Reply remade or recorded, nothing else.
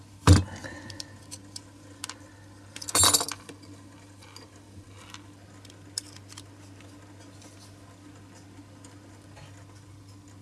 recorded